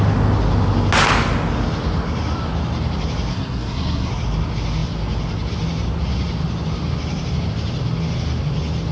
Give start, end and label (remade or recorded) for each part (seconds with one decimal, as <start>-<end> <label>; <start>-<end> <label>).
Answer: 0.0-3.3 recorded; 3.3-4.1 remade; 4.1-8.9 recorded